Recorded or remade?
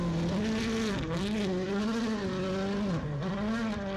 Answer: recorded